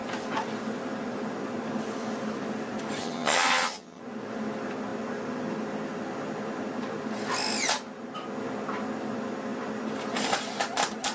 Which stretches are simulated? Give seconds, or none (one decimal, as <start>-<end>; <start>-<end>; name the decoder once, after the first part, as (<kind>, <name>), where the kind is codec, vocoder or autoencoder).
3.0-4.0 (vocoder, HiFi-GAN)